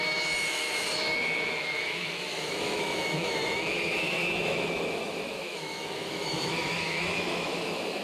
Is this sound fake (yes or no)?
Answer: yes